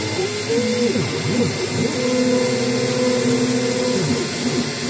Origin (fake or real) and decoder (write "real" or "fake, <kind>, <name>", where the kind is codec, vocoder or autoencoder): real